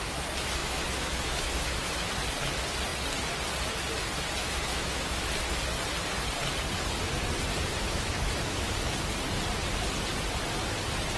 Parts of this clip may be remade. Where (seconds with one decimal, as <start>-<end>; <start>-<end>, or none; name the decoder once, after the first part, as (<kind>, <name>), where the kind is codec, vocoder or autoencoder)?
0.6-2.1 (autoencoder, DAC-VAE); 4.4-5.3; 7.8-8.7

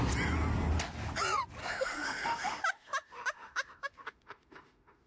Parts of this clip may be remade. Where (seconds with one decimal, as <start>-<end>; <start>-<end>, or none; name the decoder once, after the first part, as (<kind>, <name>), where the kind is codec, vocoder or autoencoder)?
1.6-5.1 (autoencoder, DAC-VAE)

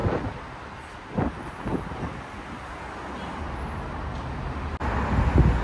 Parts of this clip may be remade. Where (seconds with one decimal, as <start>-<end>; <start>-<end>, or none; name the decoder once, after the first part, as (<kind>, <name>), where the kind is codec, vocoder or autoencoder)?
none

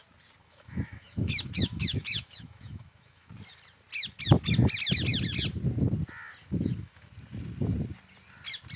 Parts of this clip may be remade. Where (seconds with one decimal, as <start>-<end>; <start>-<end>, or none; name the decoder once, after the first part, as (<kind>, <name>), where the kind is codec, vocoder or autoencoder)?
0.4-3.3 (autoencoder, DAC-VAE); 6.4-7.0

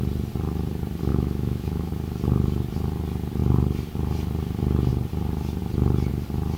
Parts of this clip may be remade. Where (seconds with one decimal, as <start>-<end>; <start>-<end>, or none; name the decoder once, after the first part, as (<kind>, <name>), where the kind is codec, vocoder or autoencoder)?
1.1-1.9 (autoencoder, DAC-VAE)

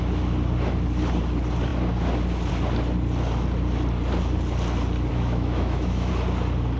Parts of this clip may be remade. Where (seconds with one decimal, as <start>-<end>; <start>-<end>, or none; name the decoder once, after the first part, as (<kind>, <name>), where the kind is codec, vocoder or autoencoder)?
5.1-6.1 (autoencoder, DAC-VAE)

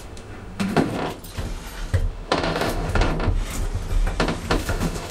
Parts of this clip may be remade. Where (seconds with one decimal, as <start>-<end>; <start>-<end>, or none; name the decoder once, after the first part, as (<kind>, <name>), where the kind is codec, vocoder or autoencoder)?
0.0-0.9 (autoencoder, DAC-VAE); 2.1-3.1; 4.6-5.1

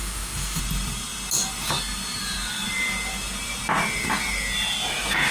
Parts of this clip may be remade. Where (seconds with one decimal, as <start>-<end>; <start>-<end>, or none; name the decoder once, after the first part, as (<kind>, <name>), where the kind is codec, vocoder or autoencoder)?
0.0-0.6 (autoencoder, DAC-VAE)